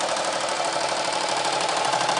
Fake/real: fake